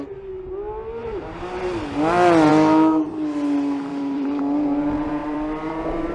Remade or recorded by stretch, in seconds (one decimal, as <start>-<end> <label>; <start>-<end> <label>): 0.0-1.0 recorded; 1.0-1.6 remade; 1.6-3.9 recorded; 3.9-4.4 remade; 4.4-5.2 recorded; 5.2-6.1 remade

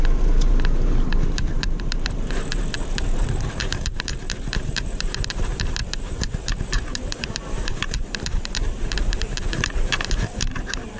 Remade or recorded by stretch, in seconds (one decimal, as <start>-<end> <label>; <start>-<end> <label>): 0.0-11.0 remade

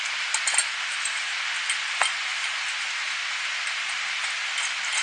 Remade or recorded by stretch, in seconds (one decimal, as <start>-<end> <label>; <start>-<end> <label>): 0.0-0.6 recorded; 0.6-1.3 remade; 1.3-2.3 recorded; 2.3-3.0 remade; 3.0-5.0 recorded

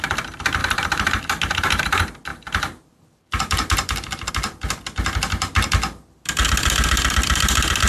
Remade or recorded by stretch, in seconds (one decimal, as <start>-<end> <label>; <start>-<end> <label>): 0.0-0.6 recorded; 0.6-1.2 remade; 1.2-2.3 recorded; 2.3-4.3 remade; 4.3-7.9 recorded

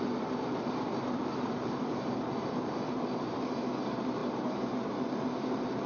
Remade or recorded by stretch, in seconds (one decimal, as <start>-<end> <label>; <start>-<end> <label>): 0.0-5.9 remade